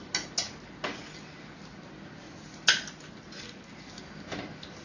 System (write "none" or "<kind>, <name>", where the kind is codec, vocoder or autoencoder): none